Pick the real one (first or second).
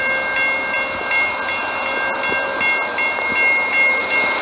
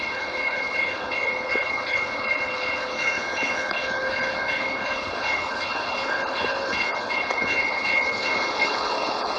first